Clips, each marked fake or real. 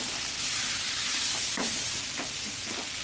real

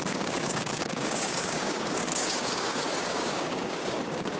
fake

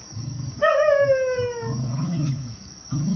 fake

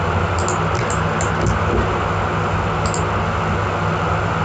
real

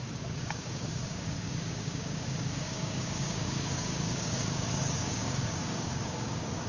fake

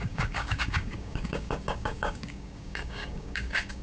fake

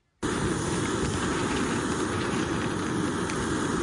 real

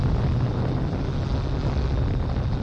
real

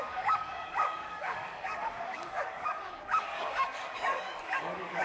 fake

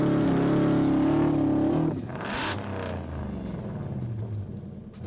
real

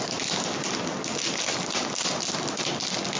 real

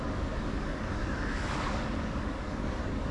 fake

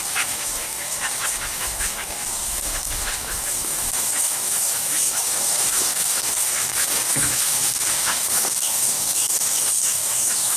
fake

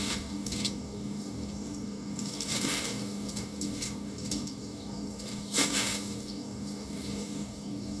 fake